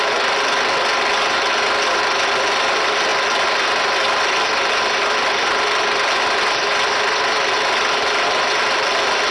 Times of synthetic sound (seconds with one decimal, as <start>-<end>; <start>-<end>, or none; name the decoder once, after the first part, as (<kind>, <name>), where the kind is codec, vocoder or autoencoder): none